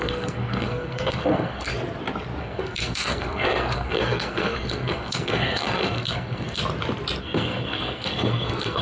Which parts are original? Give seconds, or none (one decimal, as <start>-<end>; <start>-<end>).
1.7-2.4; 6.6-7.2